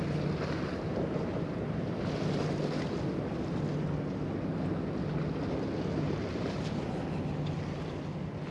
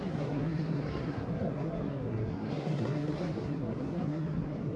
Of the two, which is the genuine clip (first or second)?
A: first